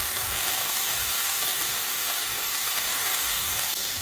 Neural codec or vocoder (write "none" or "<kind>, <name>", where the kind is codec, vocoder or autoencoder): codec, DAC